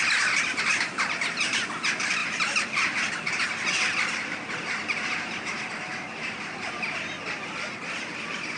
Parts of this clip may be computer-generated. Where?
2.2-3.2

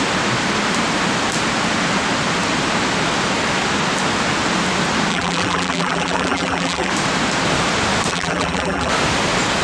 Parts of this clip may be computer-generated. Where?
5.1-6.9; 8.1-8.9

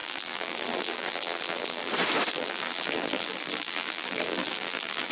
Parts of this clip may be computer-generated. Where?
0.0-1.9; 2.3-5.1